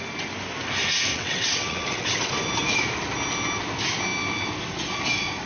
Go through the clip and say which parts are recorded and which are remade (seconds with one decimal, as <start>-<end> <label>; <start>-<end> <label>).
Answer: 0.0-1.1 recorded; 1.1-2.3 remade; 2.3-5.5 recorded